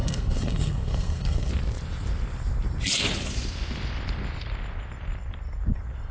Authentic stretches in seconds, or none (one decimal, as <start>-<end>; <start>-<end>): 1.5-6.1